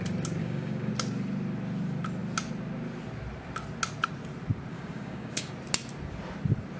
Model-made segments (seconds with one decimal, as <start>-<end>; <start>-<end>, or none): 0.4-0.9; 4.7-5.5